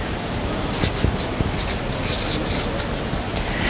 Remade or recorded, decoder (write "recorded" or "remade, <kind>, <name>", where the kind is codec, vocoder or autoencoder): recorded